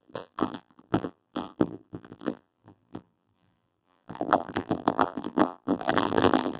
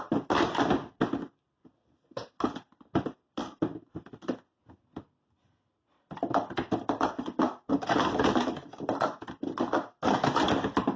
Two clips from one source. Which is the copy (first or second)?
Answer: first